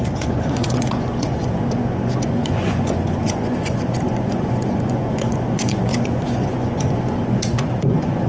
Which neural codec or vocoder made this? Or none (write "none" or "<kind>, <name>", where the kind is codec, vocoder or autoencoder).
vocoder, Vocos